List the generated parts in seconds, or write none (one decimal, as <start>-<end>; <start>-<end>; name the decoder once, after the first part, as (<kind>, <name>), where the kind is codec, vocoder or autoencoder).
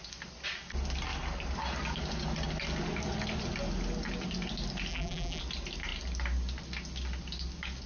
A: 4.9-5.4 (vocoder, BigVGAN v2)